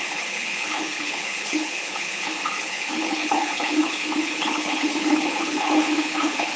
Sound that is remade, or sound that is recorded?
remade